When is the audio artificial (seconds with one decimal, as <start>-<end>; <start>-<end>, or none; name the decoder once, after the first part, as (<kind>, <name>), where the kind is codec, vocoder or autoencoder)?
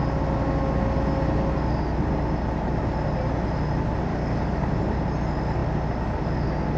4.1-4.7 (codec, DAC)